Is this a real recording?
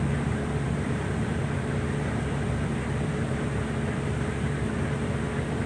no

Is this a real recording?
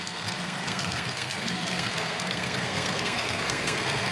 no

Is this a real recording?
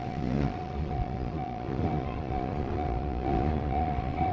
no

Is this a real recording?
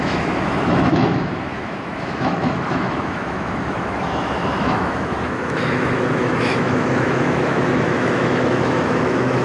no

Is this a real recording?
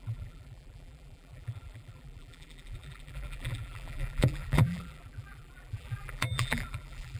no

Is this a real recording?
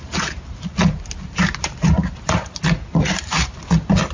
yes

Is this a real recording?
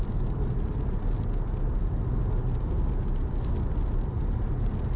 yes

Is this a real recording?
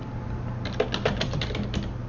yes